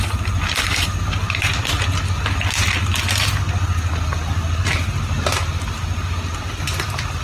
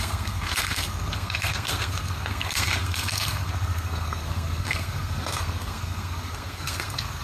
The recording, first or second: first